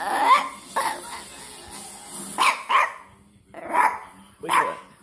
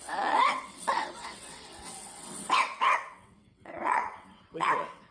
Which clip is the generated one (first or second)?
second